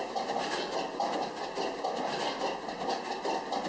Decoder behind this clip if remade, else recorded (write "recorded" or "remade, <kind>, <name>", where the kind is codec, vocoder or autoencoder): recorded